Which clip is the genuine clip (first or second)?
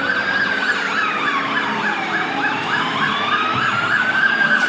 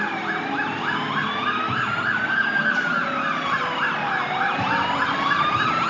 second